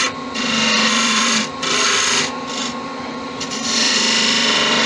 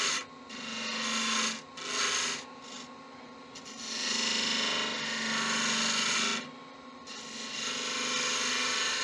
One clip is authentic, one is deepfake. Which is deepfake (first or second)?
first